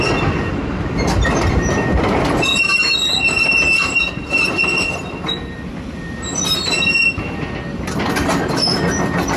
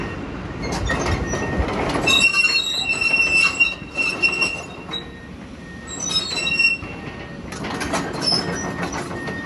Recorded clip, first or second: second